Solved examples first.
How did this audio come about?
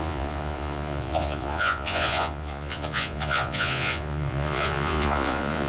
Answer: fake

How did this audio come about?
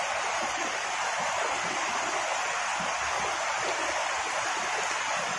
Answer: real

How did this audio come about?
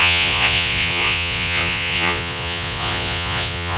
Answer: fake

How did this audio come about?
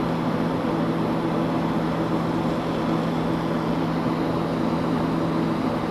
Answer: real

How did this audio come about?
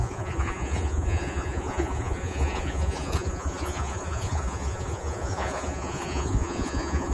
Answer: fake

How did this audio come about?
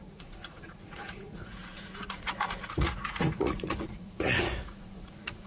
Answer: fake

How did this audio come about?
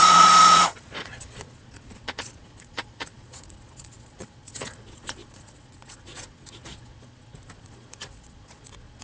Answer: fake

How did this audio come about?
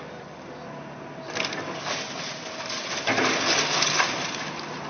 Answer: real